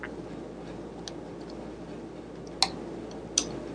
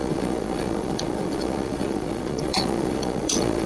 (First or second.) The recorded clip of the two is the first